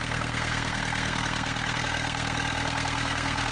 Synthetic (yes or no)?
yes